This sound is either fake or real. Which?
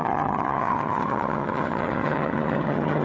fake